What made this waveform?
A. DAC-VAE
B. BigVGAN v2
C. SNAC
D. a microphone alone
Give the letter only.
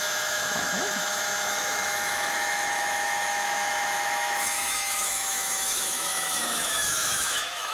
A